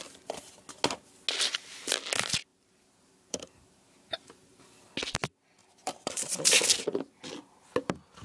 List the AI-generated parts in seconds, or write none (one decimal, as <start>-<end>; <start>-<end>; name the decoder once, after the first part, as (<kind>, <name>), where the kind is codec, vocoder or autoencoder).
2.5-4.6 (vocoder, BigVGAN v2); 5.6-6.6